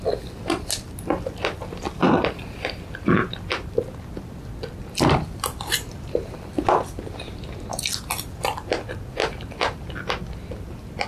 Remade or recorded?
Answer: recorded